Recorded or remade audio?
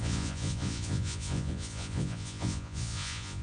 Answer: remade